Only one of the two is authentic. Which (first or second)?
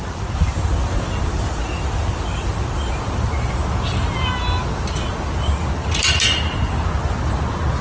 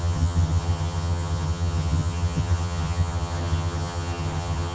first